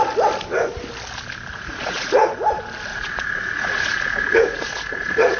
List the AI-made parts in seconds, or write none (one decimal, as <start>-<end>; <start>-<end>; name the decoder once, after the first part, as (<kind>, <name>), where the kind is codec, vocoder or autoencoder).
1.5-2.3 (vocoder, Vocos); 2.9-5.4